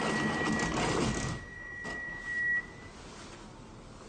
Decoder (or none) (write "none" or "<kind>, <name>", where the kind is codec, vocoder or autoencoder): none